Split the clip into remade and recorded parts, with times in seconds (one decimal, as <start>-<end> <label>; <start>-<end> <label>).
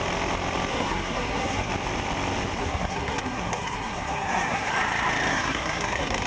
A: 0.0-0.7 recorded; 0.7-1.7 remade; 1.7-2.6 recorded; 2.6-4.7 remade; 4.7-5.3 recorded; 5.3-6.3 remade